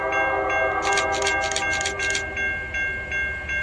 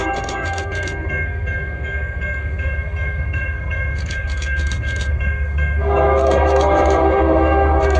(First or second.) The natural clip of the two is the first